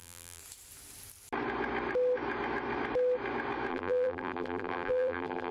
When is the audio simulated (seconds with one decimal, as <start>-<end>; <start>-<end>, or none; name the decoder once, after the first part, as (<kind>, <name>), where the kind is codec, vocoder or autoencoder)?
0.0-0.4 (vocoder, BigVGAN v2); 3.7-5.5